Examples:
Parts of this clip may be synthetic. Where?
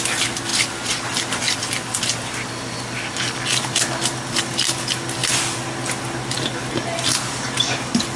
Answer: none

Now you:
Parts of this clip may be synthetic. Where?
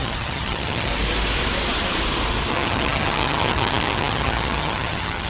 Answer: 0.0-0.9 (vocoder, HiFi-GAN); 2.5-5.3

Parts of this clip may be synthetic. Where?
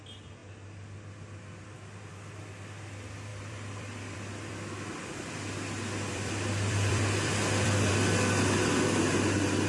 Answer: 3.3-7.9 (vocoder, BigVGAN v2)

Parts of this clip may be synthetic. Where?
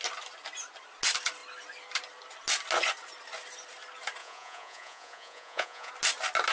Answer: 4.2-5.9 (vocoder, Vocos)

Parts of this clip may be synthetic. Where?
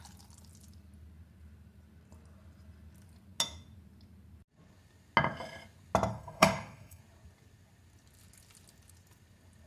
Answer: 6.1-7.0 (codec, SNAC)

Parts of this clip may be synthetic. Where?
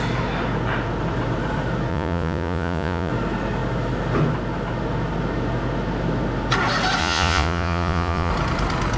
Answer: 1.9-3.1 (vocoder, Vocos); 7.0-8.3